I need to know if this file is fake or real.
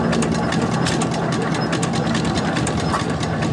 real